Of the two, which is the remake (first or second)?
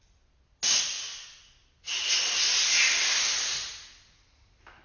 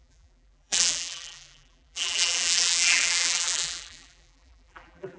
second